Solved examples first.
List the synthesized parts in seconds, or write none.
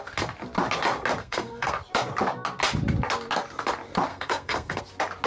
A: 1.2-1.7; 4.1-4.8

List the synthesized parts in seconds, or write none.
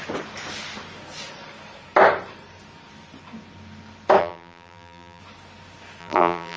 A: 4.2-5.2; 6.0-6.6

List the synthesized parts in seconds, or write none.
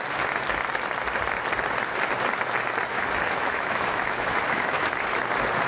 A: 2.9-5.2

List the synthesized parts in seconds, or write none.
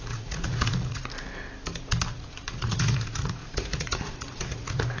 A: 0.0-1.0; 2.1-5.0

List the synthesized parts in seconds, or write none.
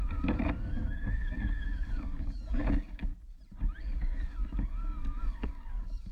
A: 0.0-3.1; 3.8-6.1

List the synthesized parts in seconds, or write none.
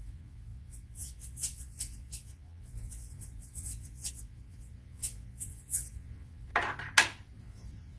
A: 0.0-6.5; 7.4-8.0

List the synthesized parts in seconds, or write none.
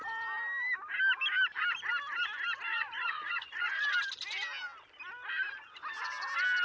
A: 2.7-3.8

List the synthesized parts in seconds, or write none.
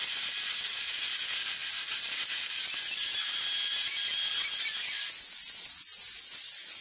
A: none